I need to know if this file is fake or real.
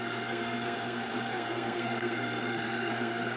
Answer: fake